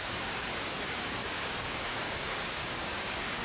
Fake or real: fake